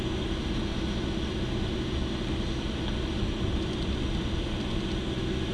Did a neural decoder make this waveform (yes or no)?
no